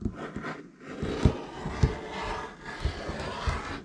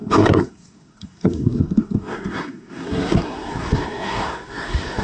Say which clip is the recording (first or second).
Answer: first